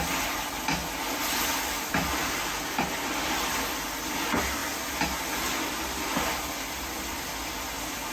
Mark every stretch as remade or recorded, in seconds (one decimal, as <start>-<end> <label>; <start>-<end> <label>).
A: 0.0-8.1 recorded